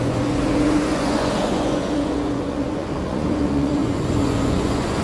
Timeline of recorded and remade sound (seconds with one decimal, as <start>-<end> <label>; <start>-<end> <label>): 0.0-5.0 remade